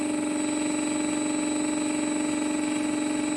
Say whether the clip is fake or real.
real